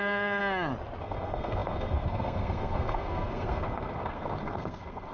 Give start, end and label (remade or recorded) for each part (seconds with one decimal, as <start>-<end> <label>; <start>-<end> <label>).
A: 0.0-0.4 remade; 0.4-1.0 recorded; 1.0-5.1 remade

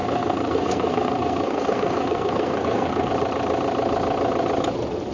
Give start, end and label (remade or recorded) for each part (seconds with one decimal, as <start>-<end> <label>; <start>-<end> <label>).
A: 0.0-3.1 remade; 3.1-5.1 recorded

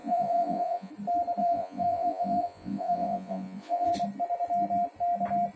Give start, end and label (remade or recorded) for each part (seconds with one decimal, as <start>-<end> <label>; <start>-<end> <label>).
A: 0.0-0.9 remade; 0.9-1.4 recorded; 1.4-3.9 remade; 3.9-5.6 recorded

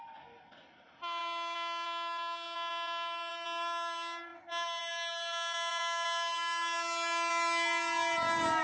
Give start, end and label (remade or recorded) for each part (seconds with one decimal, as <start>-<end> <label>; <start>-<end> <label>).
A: 0.0-8.6 recorded

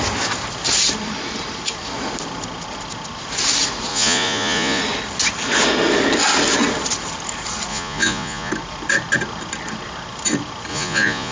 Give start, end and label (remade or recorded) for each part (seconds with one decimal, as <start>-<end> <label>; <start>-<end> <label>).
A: 0.0-3.9 recorded; 3.9-4.8 remade; 4.8-7.7 recorded; 7.7-8.5 remade; 8.5-10.7 recorded; 10.7-11.3 remade

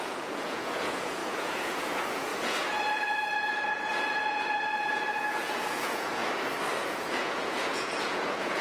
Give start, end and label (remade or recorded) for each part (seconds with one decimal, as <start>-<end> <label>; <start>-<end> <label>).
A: 0.0-6.2 remade; 6.2-6.8 recorded; 6.8-8.6 remade

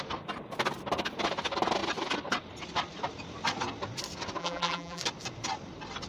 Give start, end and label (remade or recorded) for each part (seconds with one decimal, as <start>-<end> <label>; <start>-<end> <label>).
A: 0.0-4.4 recorded; 4.4-5.0 remade; 5.0-6.1 recorded

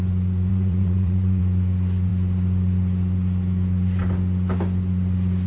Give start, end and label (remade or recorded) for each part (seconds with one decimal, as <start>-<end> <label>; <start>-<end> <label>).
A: 0.0-0.5 recorded; 0.5-1.4 remade; 1.4-5.5 recorded